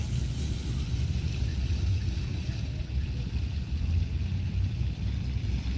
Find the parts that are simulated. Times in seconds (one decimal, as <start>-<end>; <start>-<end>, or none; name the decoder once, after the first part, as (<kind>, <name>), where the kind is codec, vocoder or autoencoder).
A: none